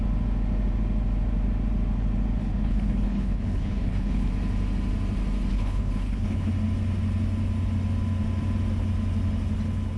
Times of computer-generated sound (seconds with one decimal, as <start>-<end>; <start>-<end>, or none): 2.4-4.3; 5.5-6.5